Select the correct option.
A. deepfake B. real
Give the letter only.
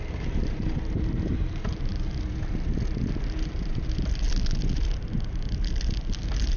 B